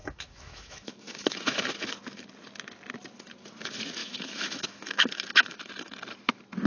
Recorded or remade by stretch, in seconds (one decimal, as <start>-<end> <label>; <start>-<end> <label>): 0.0-1.7 remade; 1.7-4.0 recorded; 4.0-5.7 remade; 5.7-6.7 recorded